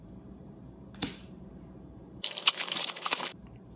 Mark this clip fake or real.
fake